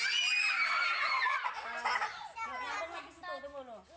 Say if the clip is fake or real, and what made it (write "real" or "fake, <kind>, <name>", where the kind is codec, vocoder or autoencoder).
real